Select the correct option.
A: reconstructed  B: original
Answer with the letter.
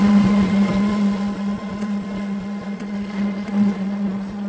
A